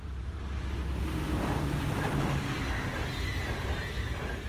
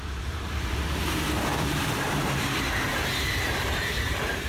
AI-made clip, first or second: second